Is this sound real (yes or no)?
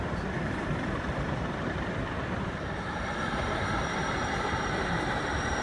no